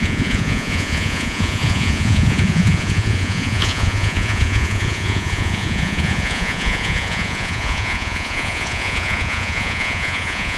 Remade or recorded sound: remade